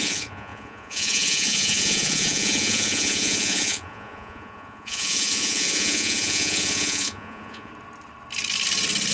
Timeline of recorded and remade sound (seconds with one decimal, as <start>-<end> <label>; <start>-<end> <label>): 0.0-7.7 remade; 7.7-9.1 recorded